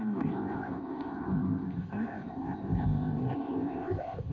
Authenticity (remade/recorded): remade